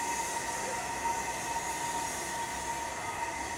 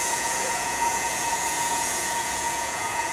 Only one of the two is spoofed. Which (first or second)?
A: second